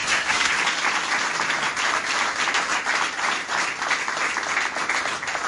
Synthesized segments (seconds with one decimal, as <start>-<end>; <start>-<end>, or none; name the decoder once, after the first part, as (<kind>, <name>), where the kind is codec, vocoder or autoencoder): 0.0-0.5 (codec, SNAC)